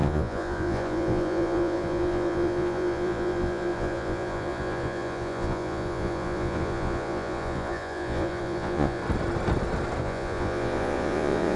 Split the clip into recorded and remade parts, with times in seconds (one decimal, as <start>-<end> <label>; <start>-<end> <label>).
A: 0.0-9.0 remade; 9.0-10.0 recorded; 10.0-11.6 remade